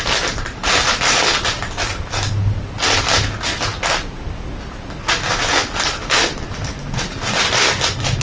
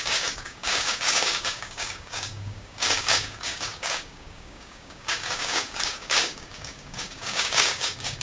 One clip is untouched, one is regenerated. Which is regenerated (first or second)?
second